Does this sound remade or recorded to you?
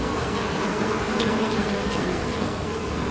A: remade